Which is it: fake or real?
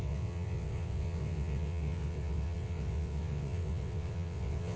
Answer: fake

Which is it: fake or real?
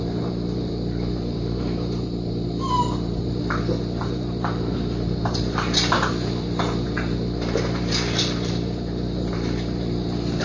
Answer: fake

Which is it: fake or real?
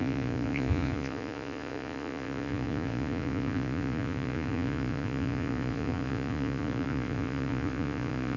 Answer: fake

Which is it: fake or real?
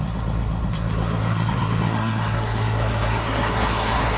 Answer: fake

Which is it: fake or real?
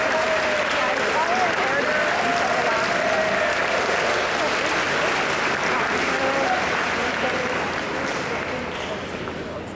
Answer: real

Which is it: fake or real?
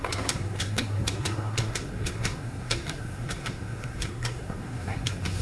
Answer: fake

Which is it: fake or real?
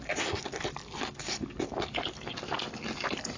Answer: real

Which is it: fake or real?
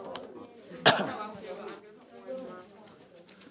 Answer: real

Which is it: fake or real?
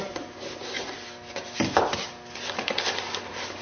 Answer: real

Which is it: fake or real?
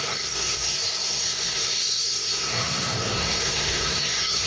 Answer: fake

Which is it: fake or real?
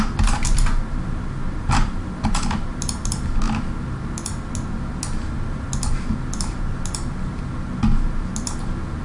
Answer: real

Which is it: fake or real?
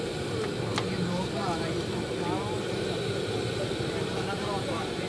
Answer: real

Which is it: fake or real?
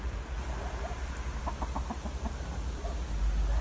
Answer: real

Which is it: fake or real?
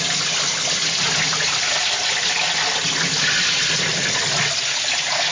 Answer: real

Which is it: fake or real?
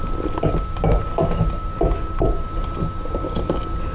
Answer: real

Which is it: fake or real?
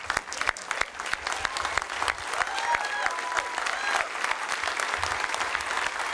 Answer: real